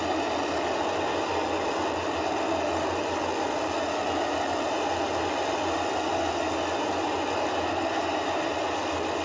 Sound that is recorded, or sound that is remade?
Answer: recorded